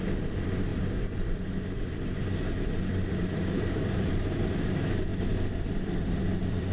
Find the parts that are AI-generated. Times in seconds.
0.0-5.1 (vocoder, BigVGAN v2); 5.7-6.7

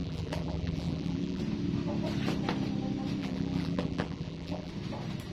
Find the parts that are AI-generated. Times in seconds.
0.0-1.4 (vocoder, BigVGAN v2); 3.2-4.7

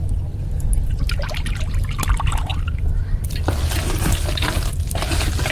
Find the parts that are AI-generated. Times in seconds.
0.0-2.5 (vocoder, BigVGAN v2); 3.9-5.5

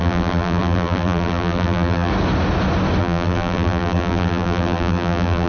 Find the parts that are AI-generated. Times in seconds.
0.0-2.1 (vocoder, BigVGAN v2); 3.0-5.5

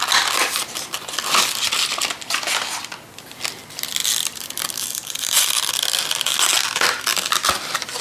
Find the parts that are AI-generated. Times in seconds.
4.0-5.7 (vocoder, BigVGAN v2)

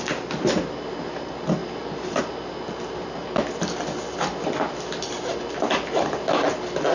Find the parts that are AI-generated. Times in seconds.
1.6-2.2 (vocoder, BigVGAN v2)

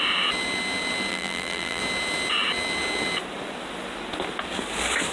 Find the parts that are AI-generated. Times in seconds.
1.1-1.8 (vocoder, BigVGAN v2)

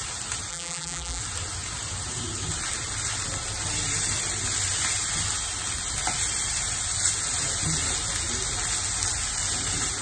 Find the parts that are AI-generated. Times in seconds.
0.5-1.2 (vocoder, BigVGAN v2)